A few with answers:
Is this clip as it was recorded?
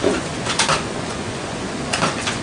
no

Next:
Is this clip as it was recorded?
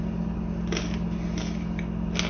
yes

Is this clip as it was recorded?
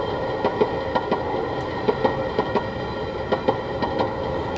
yes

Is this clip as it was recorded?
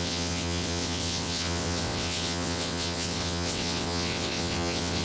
no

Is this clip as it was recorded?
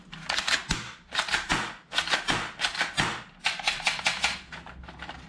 yes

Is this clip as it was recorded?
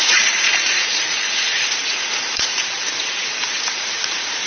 no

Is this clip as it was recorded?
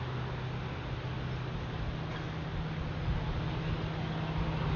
yes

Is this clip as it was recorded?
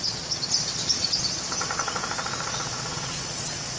no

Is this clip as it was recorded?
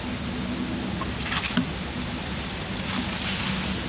yes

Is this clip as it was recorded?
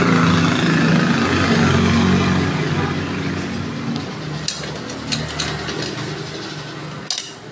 yes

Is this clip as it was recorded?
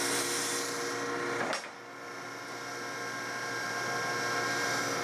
yes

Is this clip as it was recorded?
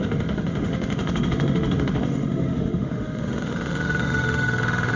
no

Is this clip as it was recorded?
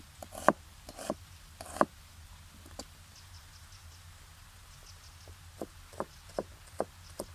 yes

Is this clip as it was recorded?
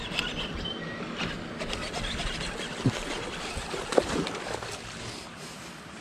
yes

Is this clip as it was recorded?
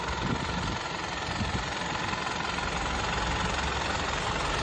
yes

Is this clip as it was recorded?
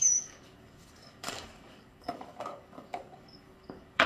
no